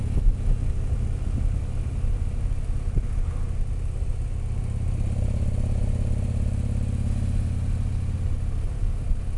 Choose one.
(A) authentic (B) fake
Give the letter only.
A